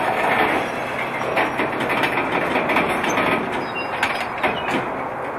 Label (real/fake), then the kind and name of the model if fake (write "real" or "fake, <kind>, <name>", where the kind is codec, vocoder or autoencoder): real